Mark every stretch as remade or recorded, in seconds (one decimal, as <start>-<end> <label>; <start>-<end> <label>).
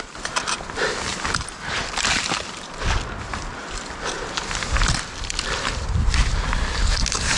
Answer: 0.0-1.1 recorded; 1.1-2.2 remade; 2.2-3.6 recorded; 3.6-6.1 remade; 6.1-7.4 recorded